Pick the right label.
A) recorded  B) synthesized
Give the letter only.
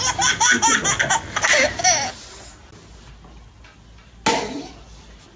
A